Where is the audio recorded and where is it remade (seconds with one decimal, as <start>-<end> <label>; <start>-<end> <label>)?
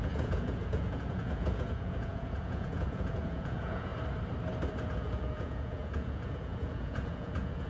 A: 0.0-3.9 remade; 3.9-4.8 recorded; 4.8-7.7 remade